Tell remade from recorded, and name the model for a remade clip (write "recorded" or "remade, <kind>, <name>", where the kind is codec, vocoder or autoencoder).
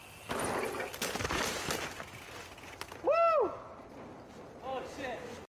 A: recorded